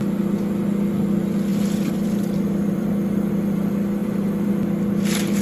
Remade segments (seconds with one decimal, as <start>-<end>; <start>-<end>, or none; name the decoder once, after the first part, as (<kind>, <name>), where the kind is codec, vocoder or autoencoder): 1.5-3.3 (vocoder, BigVGAN v2); 4.0-4.5

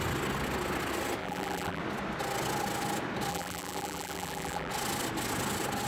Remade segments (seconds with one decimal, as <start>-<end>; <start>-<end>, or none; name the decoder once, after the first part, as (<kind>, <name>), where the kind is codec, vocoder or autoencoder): 1.2-1.8 (vocoder, BigVGAN v2); 3.3-4.7

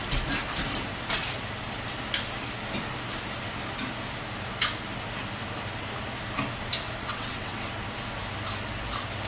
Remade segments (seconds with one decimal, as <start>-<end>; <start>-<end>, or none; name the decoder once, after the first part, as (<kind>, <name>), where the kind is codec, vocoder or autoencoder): 7.1-7.7 (vocoder, WaveNeXt)